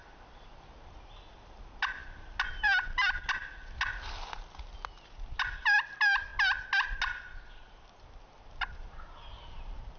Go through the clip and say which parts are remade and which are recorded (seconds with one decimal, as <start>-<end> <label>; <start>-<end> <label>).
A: 0.0-10.0 recorded